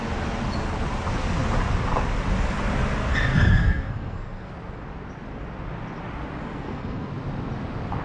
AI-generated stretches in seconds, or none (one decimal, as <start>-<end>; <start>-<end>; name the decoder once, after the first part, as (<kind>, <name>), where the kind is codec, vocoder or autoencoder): 3.3-4.5 (codec, SNAC); 6.4-7.1